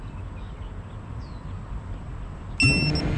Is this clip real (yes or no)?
yes